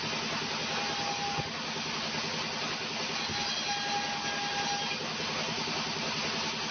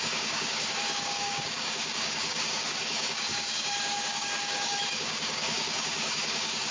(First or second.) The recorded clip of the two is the first